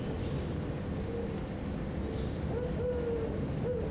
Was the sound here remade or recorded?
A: recorded